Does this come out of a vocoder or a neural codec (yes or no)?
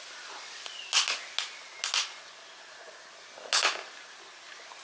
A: no